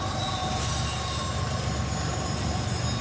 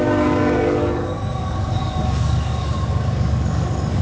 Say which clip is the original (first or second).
first